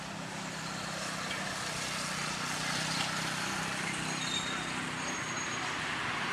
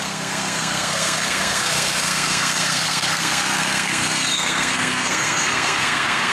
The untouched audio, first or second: first